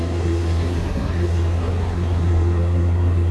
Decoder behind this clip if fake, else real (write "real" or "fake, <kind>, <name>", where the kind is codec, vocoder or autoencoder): fake, codec, SNAC